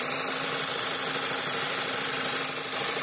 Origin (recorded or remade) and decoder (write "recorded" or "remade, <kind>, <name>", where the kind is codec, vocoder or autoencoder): remade, vocoder, BigVGAN v2